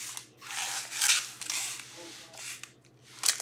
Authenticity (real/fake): real